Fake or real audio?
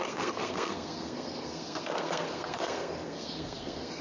fake